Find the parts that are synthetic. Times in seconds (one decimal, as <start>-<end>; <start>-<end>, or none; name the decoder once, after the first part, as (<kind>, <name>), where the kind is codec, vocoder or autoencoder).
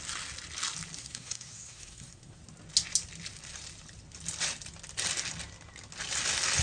1.0-2.4 (codec, SNAC)